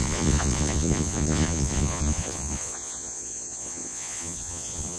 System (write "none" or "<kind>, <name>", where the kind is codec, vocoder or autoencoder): vocoder, Vocos